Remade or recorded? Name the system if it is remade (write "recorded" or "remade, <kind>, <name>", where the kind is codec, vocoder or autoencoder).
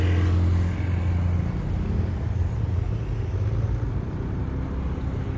recorded